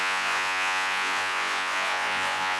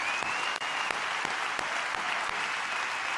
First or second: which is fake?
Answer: first